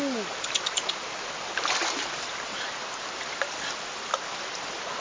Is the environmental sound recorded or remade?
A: recorded